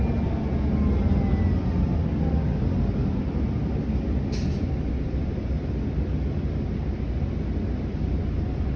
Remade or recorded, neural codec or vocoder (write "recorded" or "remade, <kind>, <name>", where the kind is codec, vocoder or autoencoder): recorded